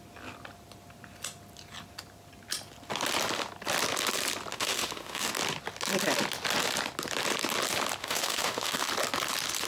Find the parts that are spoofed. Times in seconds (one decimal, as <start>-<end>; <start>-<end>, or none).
4.5-5.3; 8.0-8.9